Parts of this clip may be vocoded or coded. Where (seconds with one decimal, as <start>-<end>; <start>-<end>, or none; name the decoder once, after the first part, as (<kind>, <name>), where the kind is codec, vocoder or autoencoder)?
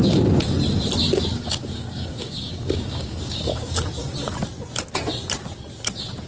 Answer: 1.3-3.8 (codec, DAC)